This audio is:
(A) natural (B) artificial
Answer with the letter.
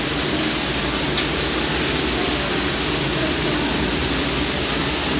A